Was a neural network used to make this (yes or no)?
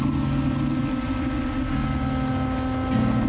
no